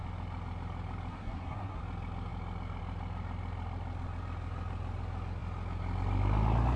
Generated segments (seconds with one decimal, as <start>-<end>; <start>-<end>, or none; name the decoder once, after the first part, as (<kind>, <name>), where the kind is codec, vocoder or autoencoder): 1.1-1.8 (codec, SNAC)